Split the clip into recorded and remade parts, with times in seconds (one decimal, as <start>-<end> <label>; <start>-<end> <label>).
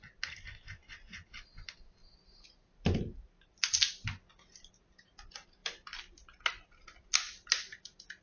0.0-8.2 recorded